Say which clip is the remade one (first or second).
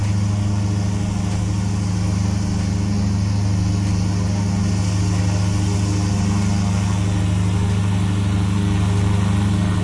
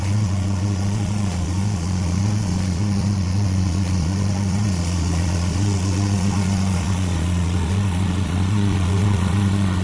second